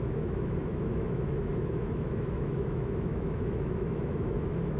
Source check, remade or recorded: remade